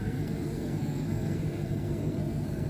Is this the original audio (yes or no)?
no